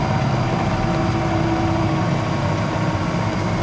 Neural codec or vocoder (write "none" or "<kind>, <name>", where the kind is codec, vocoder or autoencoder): none